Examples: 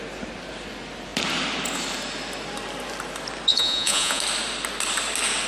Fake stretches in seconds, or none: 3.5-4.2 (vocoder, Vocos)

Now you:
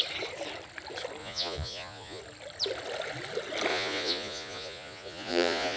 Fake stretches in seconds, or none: 1.2-2.2 (vocoder, Vocos); 3.7-5.8

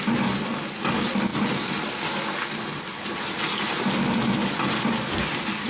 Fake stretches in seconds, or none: none

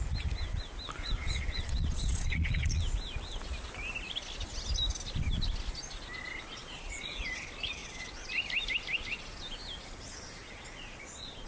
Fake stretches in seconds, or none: 1.0-2.8 (vocoder, Vocos); 6.6-7.2; 7.8-8.3; 10.4-11.5

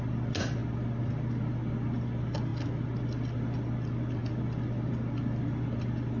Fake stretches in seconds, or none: none

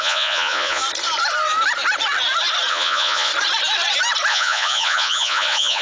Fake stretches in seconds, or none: 0.0-0.8 (vocoder, Vocos); 2.7-3.3; 4.3-5.8

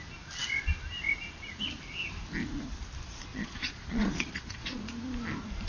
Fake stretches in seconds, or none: 3.3-4.8 (vocoder, Vocos)